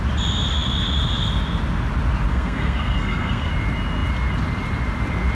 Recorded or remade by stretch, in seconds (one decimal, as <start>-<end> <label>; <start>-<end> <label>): 0.0-2.3 recorded; 2.3-3.5 remade; 3.5-5.3 recorded